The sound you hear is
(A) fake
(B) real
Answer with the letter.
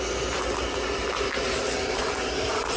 B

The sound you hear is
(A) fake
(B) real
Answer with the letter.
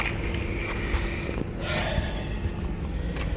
B